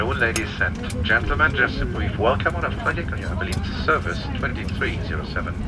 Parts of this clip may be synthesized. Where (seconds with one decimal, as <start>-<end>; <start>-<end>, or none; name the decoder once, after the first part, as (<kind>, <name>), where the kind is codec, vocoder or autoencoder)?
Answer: 1.6-3.5 (vocoder, BigVGAN v2); 4.5-5.7